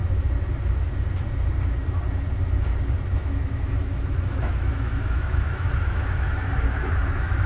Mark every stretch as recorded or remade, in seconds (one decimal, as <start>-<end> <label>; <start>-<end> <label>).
0.0-3.1 recorded; 3.1-7.5 remade